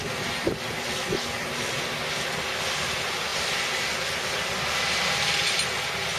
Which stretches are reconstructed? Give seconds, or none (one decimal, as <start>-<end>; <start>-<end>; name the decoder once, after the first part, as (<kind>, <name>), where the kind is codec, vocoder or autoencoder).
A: none